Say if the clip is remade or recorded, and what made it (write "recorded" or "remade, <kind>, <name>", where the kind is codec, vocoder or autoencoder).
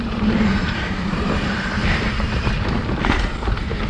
remade, vocoder, BigVGAN v2